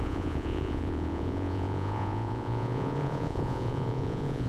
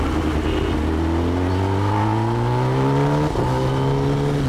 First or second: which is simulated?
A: first